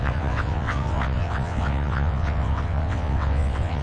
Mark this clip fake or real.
fake